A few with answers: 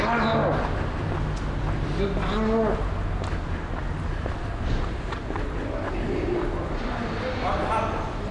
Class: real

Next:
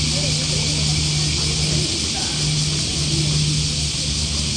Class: real